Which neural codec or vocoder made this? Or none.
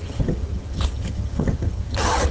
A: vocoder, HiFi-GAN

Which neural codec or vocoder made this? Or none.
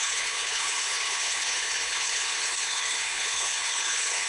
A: codec, HILCodec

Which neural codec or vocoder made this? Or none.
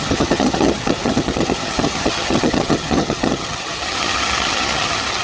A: vocoder, HiFi-GAN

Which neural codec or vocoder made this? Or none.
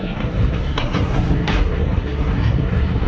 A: codec, SNAC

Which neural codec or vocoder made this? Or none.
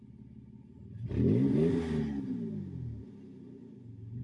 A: none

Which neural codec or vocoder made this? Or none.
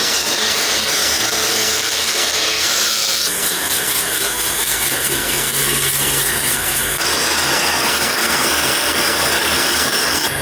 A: codec, SNAC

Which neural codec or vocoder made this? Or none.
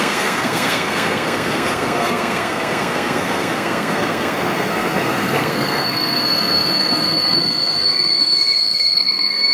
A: codec, SNAC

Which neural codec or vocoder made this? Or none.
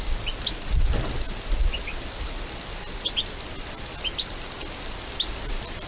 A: none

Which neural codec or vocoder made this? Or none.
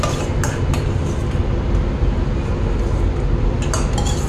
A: none